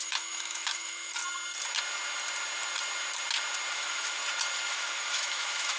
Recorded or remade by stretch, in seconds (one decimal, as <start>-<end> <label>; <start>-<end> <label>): 0.0-1.2 remade; 1.2-3.7 recorded; 3.7-4.2 remade; 4.2-4.7 recorded; 4.7-5.8 remade